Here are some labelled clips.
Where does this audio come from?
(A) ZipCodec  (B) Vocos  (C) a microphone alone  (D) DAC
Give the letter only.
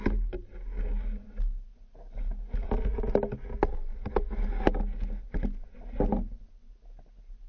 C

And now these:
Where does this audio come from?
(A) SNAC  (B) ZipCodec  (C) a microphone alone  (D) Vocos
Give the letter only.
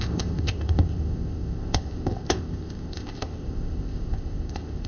B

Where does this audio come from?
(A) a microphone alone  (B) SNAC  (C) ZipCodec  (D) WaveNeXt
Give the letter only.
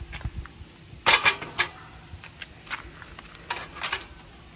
A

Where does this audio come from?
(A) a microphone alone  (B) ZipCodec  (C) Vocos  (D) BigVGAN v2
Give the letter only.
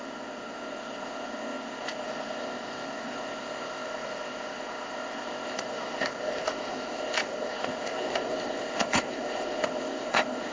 B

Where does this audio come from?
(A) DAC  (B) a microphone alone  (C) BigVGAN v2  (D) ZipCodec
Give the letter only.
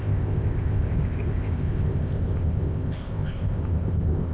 D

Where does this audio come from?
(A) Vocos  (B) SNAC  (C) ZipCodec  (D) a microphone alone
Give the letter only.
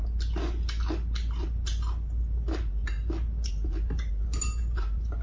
D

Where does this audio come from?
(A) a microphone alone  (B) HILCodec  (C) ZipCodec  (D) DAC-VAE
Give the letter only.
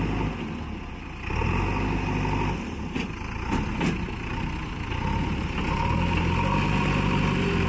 A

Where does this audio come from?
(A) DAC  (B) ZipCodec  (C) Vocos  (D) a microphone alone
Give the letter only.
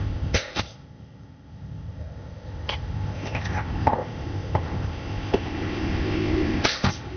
B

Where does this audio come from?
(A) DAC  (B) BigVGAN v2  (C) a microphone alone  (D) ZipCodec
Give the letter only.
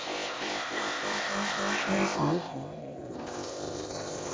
D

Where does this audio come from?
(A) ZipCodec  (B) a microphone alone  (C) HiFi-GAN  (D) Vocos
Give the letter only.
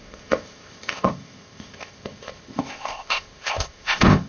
A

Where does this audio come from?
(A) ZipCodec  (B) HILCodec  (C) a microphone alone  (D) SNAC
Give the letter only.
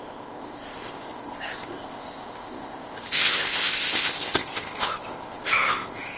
A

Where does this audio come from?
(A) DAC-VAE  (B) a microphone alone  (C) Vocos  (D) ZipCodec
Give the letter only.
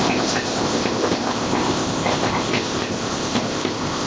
D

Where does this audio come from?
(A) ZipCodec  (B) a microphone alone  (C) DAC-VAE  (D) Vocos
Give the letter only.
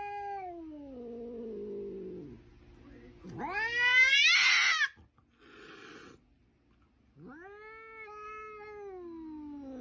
B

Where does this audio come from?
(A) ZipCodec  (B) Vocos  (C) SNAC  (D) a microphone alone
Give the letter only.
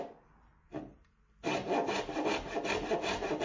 D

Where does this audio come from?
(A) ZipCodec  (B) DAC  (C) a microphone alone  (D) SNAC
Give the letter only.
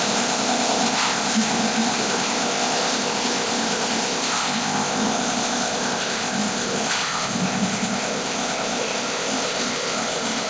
A